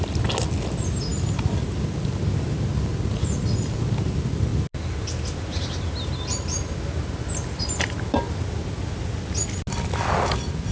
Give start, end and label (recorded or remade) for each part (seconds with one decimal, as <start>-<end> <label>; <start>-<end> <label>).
0.0-10.7 recorded